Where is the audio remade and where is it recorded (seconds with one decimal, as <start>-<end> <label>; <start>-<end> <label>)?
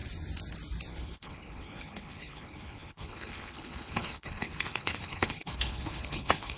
0.0-0.9 recorded; 0.9-6.6 remade